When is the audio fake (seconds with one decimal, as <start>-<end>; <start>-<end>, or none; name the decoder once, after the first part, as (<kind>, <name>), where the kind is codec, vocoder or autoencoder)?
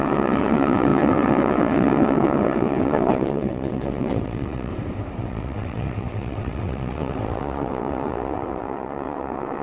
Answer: 0.0-4.7 (vocoder, WaveNeXt); 5.2-9.6